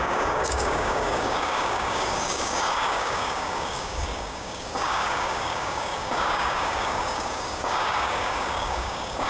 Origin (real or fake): fake